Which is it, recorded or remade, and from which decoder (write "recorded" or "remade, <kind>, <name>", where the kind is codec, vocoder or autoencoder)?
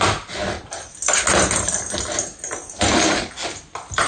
recorded